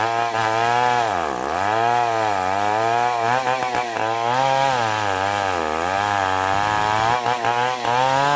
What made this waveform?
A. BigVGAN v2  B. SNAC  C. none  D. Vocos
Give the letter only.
C